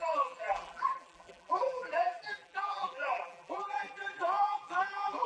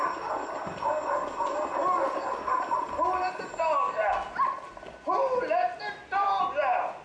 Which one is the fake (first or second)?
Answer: first